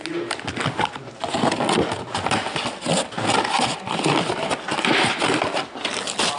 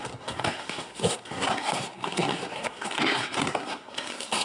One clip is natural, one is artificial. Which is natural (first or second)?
first